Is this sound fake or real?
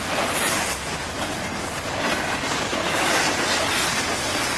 real